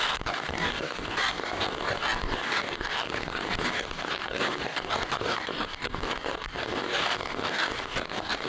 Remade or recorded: remade